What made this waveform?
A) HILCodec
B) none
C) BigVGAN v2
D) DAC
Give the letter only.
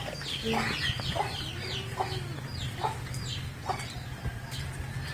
C